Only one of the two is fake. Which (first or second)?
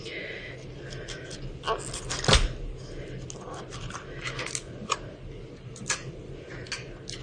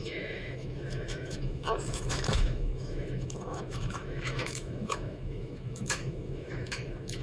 second